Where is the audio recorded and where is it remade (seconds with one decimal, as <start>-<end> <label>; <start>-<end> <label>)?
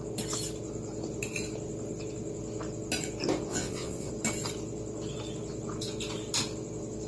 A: 0.0-3.5 recorded; 3.5-4.1 remade; 4.1-7.1 recorded